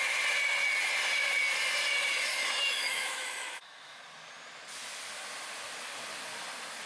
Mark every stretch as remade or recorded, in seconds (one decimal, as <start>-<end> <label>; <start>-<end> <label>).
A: 0.0-2.3 recorded; 2.3-4.0 remade; 4.0-6.9 recorded